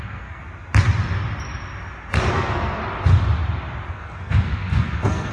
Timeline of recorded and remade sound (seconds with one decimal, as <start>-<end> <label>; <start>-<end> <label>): 0.0-0.4 remade; 0.4-2.3 recorded; 2.3-2.8 remade; 2.8-3.9 recorded; 3.9-5.3 remade